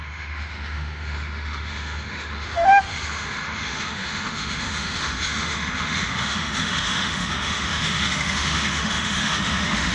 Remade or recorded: remade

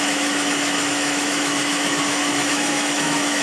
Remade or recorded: remade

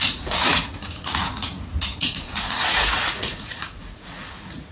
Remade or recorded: remade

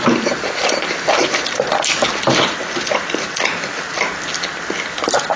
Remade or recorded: recorded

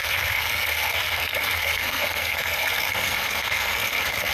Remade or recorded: remade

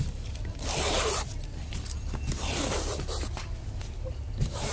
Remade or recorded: recorded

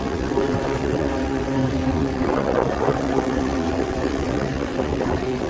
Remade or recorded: remade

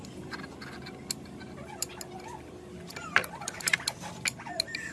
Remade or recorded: recorded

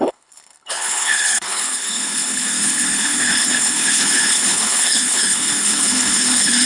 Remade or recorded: remade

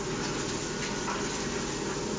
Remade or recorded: recorded